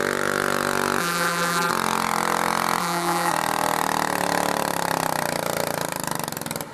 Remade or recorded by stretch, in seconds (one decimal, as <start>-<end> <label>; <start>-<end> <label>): 0.0-1.0 recorded; 1.0-1.7 remade; 1.7-2.8 recorded; 2.8-3.3 remade; 3.3-6.7 recorded